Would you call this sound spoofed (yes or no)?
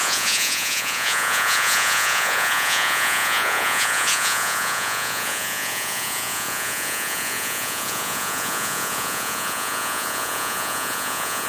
yes